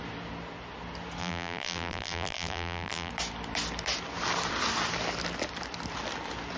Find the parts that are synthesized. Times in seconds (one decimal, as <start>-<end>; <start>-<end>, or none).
1.2-3.1